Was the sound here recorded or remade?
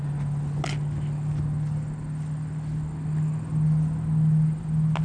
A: recorded